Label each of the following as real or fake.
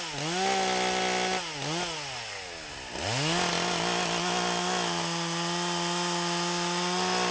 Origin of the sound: real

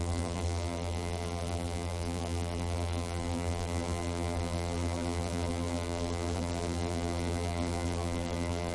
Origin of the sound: fake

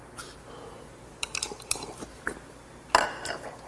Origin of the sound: fake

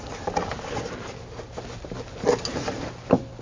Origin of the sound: real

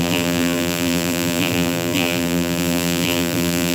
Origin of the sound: fake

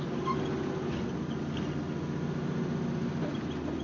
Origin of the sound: real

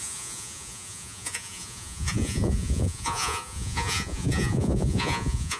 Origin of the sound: fake